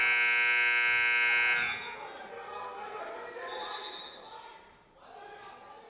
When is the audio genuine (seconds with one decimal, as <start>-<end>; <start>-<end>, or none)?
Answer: 0.0-2.3; 3.0-5.9